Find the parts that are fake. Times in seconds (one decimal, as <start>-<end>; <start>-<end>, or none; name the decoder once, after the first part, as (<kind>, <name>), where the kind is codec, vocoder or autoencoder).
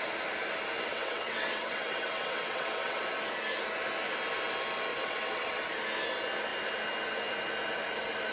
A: 0.9-3.0 (vocoder, WaveNeXt); 4.9-5.6